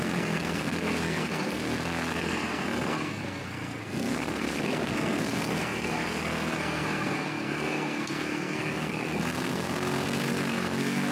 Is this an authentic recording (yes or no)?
no